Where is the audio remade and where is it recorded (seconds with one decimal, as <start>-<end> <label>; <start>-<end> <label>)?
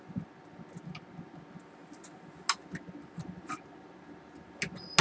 0.0-5.0 recorded